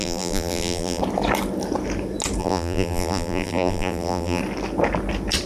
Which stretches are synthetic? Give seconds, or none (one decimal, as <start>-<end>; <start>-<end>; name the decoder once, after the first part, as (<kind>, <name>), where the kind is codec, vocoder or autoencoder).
0.0-1.0 (vocoder, BigVGAN v2); 2.4-4.4